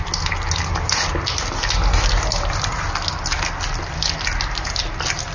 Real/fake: real